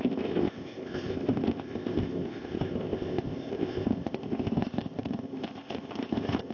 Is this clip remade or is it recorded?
remade